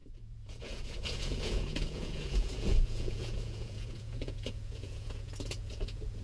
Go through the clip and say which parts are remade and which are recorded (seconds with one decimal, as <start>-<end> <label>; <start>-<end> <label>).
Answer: 0.0-6.2 remade